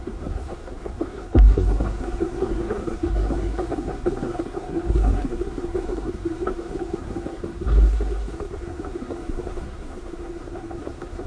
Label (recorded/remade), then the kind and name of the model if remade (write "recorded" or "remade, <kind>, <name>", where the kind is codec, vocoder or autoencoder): remade, codec, SNAC